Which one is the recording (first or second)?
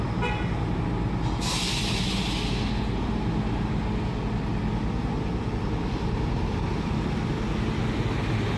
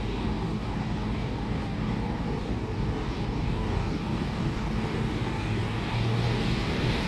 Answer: first